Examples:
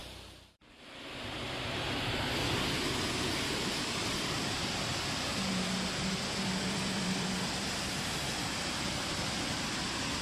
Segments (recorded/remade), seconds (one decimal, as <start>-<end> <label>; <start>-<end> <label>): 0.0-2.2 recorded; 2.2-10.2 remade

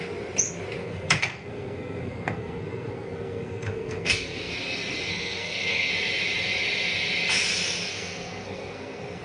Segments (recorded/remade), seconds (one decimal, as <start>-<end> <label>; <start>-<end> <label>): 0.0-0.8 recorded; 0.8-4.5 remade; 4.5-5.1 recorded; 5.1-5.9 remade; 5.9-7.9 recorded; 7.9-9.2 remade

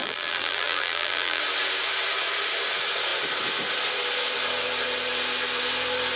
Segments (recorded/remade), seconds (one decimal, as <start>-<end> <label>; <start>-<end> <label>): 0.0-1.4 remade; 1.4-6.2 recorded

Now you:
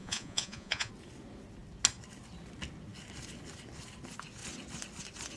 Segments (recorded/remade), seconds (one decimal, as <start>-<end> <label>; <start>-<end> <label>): 0.0-0.9 remade; 0.9-5.4 recorded

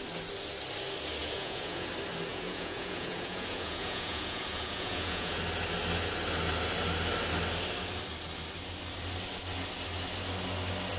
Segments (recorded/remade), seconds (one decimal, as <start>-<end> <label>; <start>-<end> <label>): 0.0-1.2 recorded; 1.2-1.9 remade; 1.9-2.3 recorded; 2.3-5.4 remade; 5.4-11.0 recorded

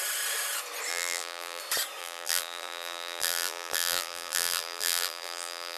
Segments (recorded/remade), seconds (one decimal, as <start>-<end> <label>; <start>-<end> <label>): 0.0-0.9 recorded; 0.9-1.6 remade; 1.6-2.0 recorded; 2.0-5.8 remade